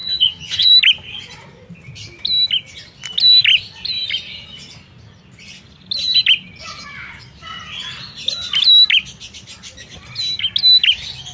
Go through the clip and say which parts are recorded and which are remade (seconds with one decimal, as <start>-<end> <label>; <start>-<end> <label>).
0.0-0.7 remade; 0.7-11.3 recorded